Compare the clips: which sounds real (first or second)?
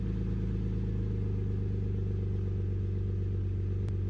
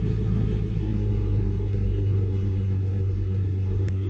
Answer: first